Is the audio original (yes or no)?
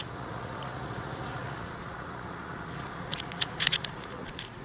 no